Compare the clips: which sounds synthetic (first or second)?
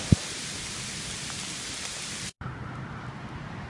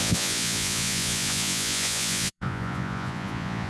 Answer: second